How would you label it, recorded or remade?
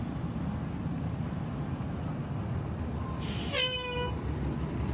recorded